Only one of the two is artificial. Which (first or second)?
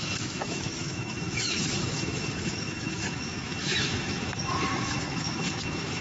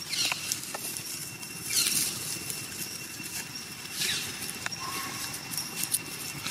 first